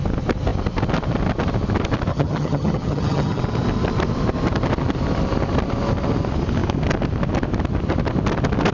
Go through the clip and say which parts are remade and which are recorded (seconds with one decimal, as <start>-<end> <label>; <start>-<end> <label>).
0.0-2.1 recorded; 2.1-3.4 remade; 3.4-8.7 recorded